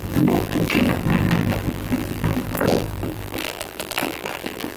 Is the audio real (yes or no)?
no